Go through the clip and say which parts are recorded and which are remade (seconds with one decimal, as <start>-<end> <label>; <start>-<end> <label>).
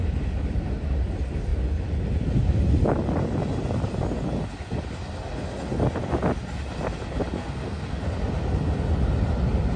0.0-7.4 recorded; 7.4-8.0 remade; 8.0-9.8 recorded